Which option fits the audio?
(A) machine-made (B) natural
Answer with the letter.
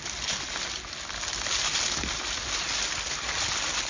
B